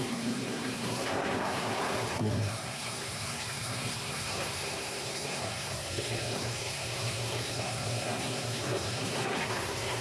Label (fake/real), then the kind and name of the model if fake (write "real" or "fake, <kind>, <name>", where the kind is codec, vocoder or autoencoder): fake, codec, SNAC